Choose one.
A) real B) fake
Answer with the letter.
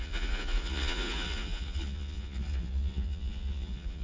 B